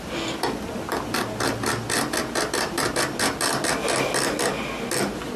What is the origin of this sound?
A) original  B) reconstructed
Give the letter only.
A